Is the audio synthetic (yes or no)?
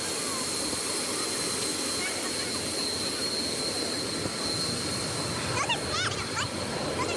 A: no